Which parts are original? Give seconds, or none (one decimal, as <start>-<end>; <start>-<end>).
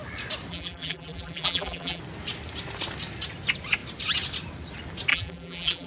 0.0-0.5; 2.0-5.1